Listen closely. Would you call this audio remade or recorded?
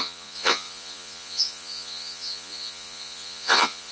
remade